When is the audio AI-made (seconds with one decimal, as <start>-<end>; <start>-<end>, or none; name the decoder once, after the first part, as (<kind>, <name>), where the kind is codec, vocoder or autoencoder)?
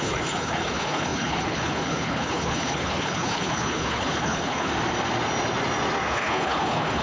0.0-4.7 (codec, HILCodec); 6.1-7.0